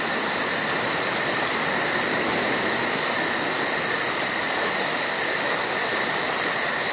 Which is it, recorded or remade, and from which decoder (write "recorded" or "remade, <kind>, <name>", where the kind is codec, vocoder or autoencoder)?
recorded